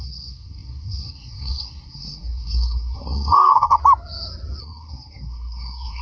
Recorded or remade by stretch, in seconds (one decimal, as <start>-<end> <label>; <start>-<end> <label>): 0.0-3.8 remade; 3.8-4.6 recorded; 4.6-6.0 remade